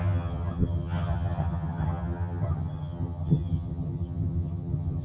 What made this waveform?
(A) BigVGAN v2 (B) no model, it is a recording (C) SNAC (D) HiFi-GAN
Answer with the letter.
D